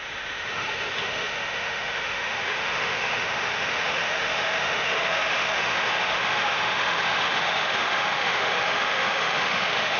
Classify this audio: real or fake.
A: fake